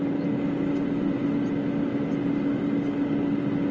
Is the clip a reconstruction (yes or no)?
no